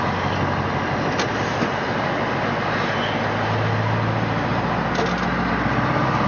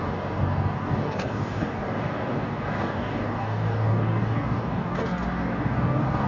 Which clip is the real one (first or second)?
first